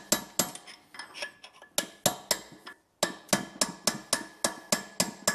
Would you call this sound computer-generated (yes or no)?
no